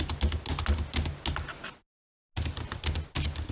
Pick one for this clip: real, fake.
real